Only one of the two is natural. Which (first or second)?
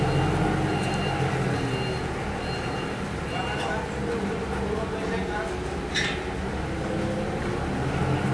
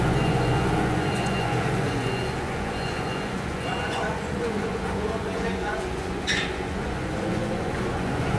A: first